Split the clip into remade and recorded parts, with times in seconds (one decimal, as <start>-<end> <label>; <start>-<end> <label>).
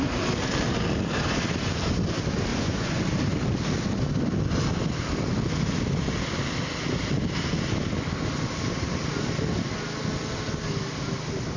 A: 0.0-2.5 recorded; 2.5-3.0 remade; 3.0-11.6 recorded